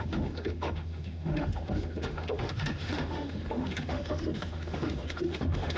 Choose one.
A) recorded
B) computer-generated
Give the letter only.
B